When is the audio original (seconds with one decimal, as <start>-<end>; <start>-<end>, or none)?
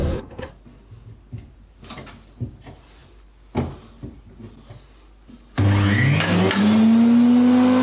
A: 0.5-7.8